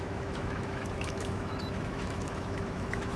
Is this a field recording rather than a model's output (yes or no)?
no